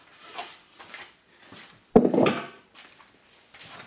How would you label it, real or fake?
fake